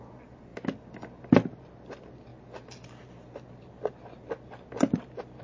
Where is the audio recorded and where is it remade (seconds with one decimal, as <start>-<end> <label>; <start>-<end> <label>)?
0.0-5.4 recorded